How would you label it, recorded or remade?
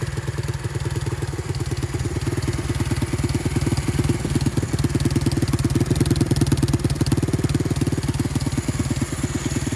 recorded